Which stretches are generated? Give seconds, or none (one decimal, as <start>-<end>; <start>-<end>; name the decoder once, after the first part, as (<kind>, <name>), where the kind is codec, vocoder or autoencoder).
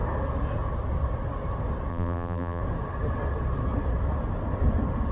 1.9-2.6 (vocoder, BigVGAN v2)